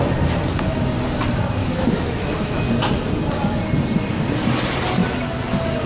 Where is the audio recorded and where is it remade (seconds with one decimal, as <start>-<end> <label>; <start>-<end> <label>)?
0.0-1.6 recorded; 1.6-2.6 remade; 2.6-5.9 recorded